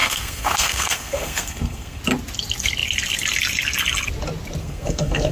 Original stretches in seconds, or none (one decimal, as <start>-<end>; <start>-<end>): 2.0-4.6